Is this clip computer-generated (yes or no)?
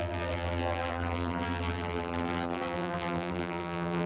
yes